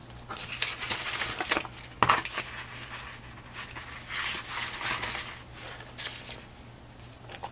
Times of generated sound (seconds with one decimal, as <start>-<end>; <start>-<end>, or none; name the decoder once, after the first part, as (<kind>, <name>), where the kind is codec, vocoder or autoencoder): none